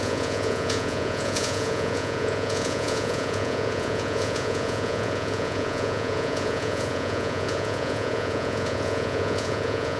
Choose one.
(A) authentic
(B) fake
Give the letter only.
B